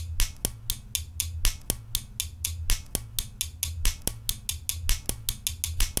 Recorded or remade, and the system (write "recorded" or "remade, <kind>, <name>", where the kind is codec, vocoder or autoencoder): recorded